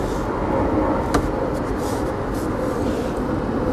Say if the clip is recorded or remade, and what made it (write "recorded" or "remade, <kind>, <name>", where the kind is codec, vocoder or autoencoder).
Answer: recorded